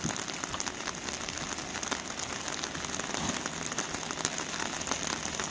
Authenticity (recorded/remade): recorded